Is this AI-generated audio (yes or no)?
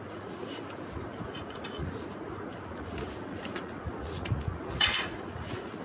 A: yes